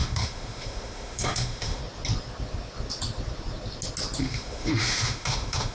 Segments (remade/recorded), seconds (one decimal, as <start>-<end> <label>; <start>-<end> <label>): 0.0-1.8 remade; 1.8-4.2 recorded; 4.2-5.7 remade